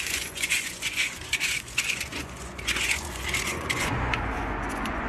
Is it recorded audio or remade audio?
remade